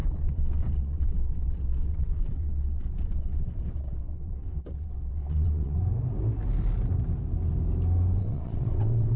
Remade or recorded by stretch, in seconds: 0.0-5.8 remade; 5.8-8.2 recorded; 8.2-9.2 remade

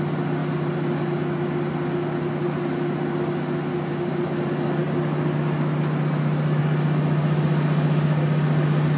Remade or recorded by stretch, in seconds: 0.0-9.0 recorded

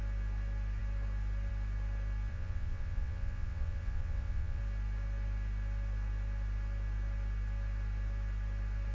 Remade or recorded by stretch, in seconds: 0.0-2.3 recorded; 2.3-4.6 remade; 4.6-8.9 recorded

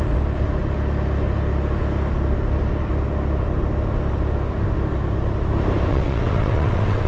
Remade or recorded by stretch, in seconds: 0.0-5.9 recorded; 5.9-7.1 remade

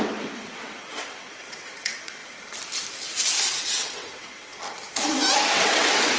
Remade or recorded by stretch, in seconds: 0.0-2.2 remade; 2.2-3.5 recorded; 3.5-4.5 remade; 4.5-5.5 recorded; 5.5-6.2 remade

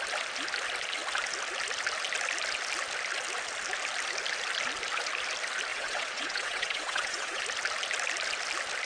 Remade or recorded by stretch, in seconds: 0.0-5.7 recorded; 5.7-7.4 remade; 7.4-8.8 recorded

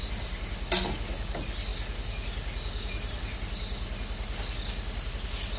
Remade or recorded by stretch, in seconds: 0.0-5.6 recorded

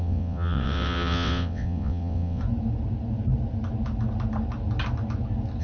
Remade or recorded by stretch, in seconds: 0.0-2.4 remade; 2.4-5.6 recorded